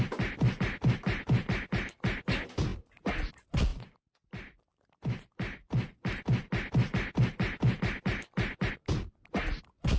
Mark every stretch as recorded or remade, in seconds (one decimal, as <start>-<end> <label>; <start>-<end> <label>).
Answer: 0.0-10.0 recorded